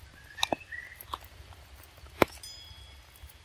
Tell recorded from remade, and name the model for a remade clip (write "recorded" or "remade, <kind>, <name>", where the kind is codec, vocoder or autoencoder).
recorded